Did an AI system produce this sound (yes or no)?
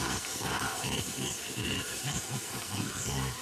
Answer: yes